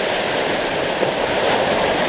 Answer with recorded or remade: recorded